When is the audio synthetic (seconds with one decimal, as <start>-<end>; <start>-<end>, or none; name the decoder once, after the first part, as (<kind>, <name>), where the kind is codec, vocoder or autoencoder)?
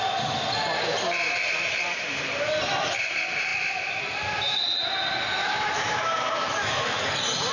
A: 5.4-7.1 (autoencoder, DAC-VAE)